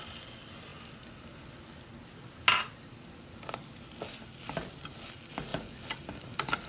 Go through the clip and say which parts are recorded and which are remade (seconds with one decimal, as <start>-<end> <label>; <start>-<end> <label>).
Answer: 0.0-6.7 recorded